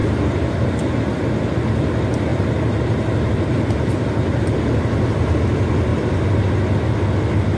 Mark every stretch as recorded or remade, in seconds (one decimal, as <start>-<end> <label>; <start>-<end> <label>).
0.0-0.7 remade; 0.7-2.3 recorded; 2.3-4.2 remade; 4.2-5.9 recorded; 5.9-6.4 remade; 6.4-7.6 recorded